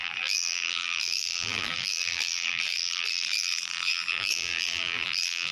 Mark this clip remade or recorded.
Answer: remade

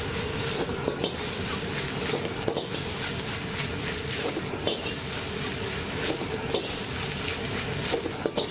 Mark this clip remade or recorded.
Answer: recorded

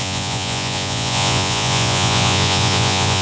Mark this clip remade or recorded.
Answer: remade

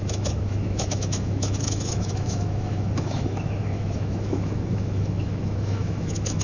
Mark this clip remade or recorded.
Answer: remade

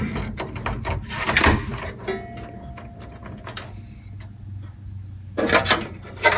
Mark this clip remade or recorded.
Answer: recorded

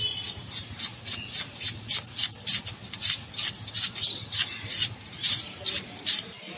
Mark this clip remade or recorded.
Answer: recorded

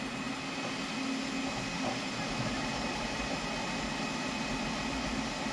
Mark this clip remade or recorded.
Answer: recorded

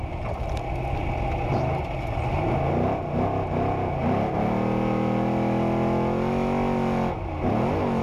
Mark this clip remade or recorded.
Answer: recorded